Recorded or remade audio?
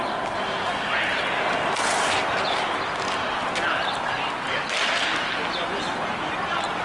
recorded